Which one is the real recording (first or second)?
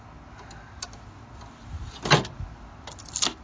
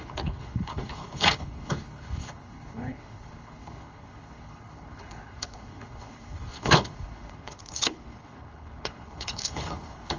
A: first